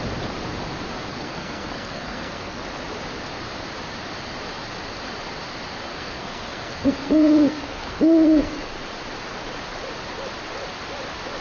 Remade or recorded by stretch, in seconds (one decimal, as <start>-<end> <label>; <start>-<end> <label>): 0.0-1.1 recorded; 1.1-2.6 remade; 2.6-5.9 recorded; 5.9-8.8 remade; 8.8-11.4 recorded